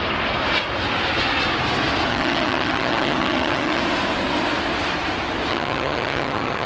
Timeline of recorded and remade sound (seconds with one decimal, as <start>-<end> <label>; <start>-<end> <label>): 0.0-2.1 recorded; 2.1-3.8 remade; 3.8-5.5 recorded; 5.5-6.7 remade